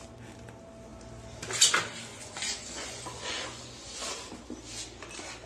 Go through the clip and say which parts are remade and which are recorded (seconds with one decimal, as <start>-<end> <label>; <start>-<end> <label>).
0.0-2.1 recorded; 2.1-4.1 remade; 4.1-5.5 recorded

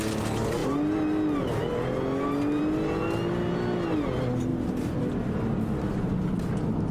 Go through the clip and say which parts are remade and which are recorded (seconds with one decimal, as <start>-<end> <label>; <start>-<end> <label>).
0.0-6.9 recorded

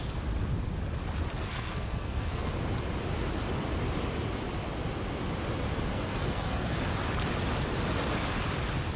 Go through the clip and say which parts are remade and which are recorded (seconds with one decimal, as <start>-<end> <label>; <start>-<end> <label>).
0.0-1.4 recorded; 1.4-2.5 remade; 2.5-5.9 recorded; 5.9-6.8 remade; 6.8-9.0 recorded

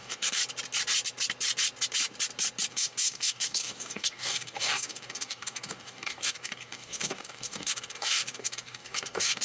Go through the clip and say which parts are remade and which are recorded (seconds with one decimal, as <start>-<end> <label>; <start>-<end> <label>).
0.0-0.4 remade; 0.4-2.7 recorded; 2.7-9.4 remade

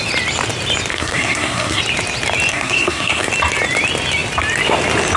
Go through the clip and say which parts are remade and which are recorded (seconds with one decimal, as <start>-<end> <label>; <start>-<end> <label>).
0.0-0.9 recorded; 0.9-1.8 remade; 1.8-2.5 recorded; 2.5-3.3 remade; 3.3-5.2 recorded

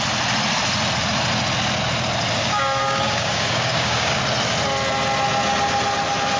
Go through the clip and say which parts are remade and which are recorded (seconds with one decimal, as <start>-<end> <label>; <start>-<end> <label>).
0.0-2.4 recorded; 2.4-4.2 remade; 4.2-6.4 recorded

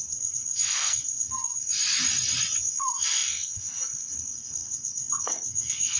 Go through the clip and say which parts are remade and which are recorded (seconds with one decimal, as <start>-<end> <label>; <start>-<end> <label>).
0.0-1.7 remade; 1.7-2.7 recorded; 2.7-6.0 remade

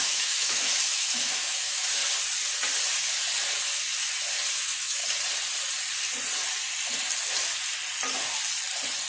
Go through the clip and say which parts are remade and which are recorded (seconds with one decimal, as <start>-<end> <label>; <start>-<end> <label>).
0.0-2.0 remade; 2.0-4.5 recorded; 4.5-5.0 remade; 5.0-9.1 recorded